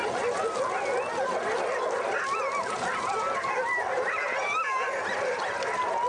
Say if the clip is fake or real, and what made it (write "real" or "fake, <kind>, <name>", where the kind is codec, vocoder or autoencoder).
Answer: real